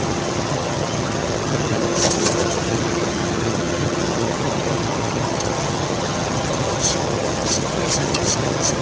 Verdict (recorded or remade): remade